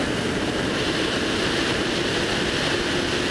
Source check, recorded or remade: recorded